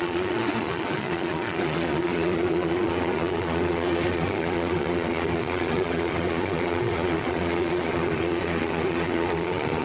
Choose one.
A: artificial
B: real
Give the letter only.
A